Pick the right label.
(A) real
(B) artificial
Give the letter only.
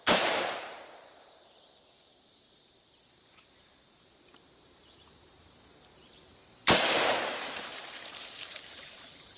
B